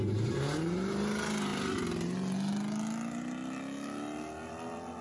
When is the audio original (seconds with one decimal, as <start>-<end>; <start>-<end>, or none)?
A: 0.0-5.0